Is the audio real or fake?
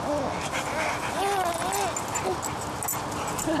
real